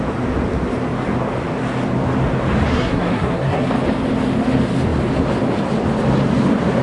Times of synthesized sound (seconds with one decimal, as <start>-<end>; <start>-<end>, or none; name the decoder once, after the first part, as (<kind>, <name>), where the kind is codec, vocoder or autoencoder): 2.7-3.7 (codec, SNAC)